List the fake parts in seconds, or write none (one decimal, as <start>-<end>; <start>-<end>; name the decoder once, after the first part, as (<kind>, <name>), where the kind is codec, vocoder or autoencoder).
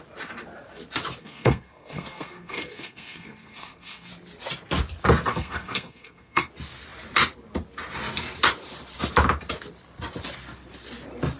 1.2-4.1 (codec, SNAC); 5.3-6.5